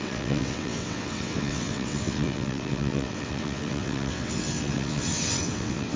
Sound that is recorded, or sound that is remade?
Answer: remade